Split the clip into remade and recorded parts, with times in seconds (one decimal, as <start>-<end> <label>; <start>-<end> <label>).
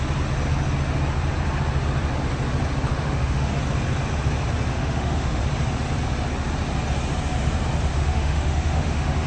0.0-2.9 recorded; 2.9-3.5 remade; 3.5-4.7 recorded; 4.7-5.4 remade; 5.4-7.9 recorded; 7.9-9.3 remade